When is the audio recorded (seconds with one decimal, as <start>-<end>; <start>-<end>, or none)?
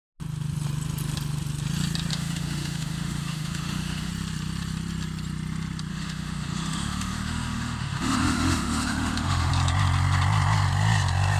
0.0-2.1; 4.1-5.9; 9.5-11.4